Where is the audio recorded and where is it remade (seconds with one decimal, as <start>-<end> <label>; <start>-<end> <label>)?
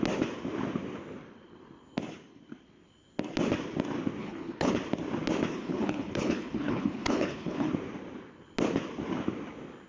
0.0-4.2 recorded; 4.2-4.7 remade; 4.7-5.5 recorded; 5.5-7.7 remade; 7.7-9.9 recorded